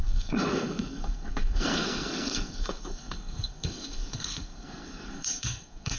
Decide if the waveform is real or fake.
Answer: fake